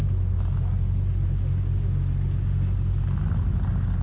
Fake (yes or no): no